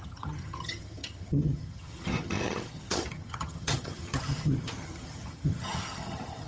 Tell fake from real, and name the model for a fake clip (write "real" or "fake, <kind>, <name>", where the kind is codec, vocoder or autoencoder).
fake, vocoder, HiFi-GAN